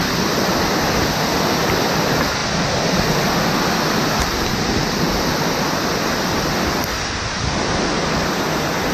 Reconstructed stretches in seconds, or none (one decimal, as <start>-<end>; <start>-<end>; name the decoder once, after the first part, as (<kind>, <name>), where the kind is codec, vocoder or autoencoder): none